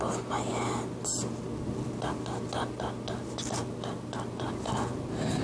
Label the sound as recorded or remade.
recorded